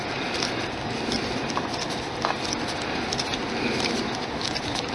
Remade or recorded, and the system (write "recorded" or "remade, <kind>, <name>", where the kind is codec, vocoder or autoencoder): recorded